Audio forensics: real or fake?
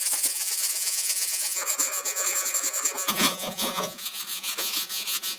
fake